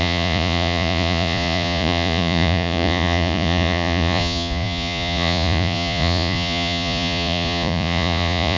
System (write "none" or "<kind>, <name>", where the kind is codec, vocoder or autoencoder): vocoder, Vocos